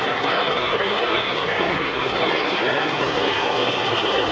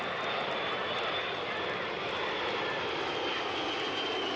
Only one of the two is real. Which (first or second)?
second